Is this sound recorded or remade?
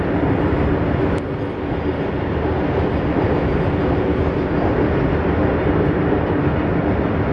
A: recorded